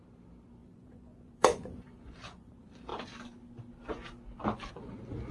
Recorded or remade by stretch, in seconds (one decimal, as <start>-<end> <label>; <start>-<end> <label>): 0.0-0.6 recorded; 0.6-2.5 remade; 2.5-5.3 recorded